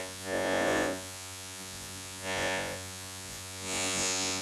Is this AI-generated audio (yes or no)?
yes